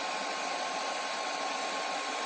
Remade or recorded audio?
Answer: recorded